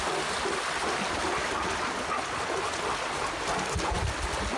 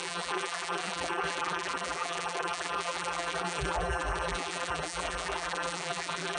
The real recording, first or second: first